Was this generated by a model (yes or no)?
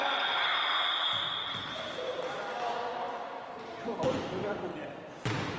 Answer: no